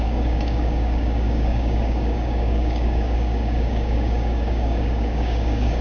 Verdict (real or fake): fake